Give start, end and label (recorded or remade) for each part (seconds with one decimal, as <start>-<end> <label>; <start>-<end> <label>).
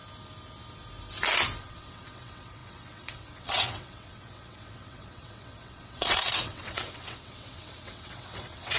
0.0-1.6 recorded; 1.6-8.8 remade